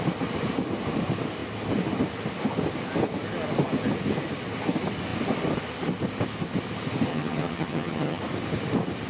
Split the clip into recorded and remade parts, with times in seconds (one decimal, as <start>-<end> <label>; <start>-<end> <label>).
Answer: 0.0-7.1 recorded; 7.1-8.2 remade; 8.2-9.1 recorded